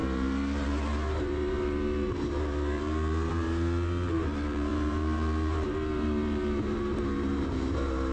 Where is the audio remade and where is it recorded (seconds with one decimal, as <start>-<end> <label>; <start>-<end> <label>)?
0.0-8.1 remade